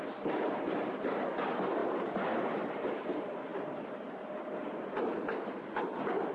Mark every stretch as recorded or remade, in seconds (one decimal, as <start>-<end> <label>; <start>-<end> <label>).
0.0-6.3 recorded